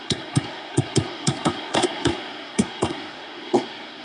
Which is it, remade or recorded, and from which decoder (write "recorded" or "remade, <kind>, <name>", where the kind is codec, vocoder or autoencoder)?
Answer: remade, codec, SNAC